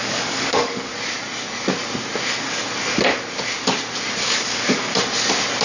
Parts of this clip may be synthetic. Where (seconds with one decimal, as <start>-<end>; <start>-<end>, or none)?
0.0-0.9; 4.2-4.9